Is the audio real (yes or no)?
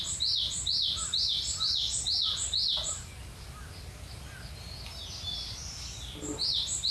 yes